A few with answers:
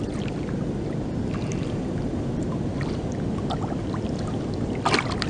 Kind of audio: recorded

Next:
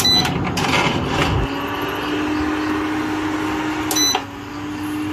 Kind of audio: recorded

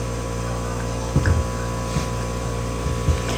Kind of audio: recorded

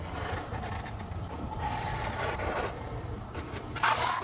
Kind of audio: remade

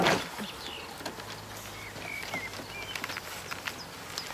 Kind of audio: recorded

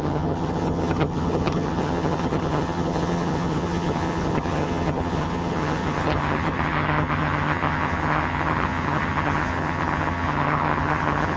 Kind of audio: remade